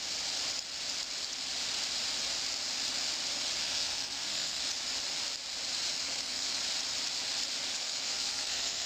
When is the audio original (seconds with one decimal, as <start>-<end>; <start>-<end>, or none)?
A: 0.0-3.6; 4.6-6.0; 6.6-7.7